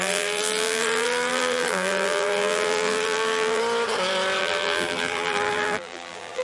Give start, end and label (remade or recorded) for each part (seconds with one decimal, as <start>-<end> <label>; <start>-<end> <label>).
0.0-3.6 remade; 3.6-4.4 recorded; 4.4-6.4 remade